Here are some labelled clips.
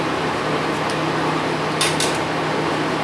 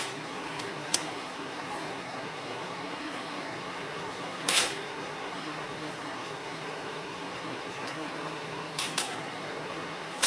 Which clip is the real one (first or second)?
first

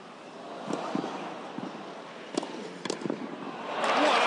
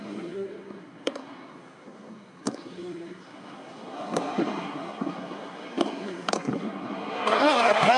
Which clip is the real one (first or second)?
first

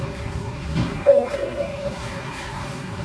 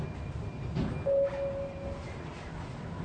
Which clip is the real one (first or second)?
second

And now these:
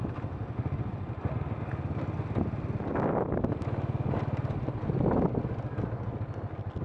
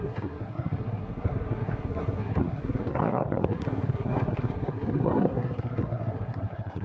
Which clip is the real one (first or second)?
first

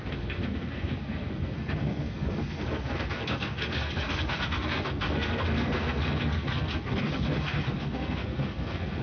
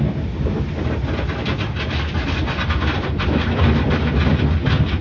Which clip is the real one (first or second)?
second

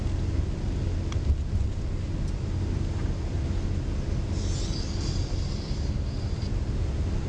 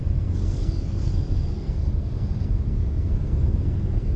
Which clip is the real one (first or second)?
first